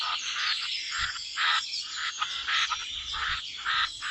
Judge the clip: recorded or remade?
remade